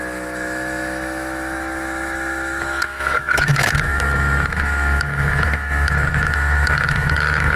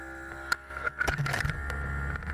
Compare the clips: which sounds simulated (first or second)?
first